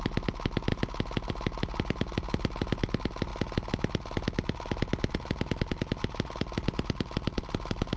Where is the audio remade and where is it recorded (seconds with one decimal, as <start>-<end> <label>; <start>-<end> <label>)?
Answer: 0.0-8.0 recorded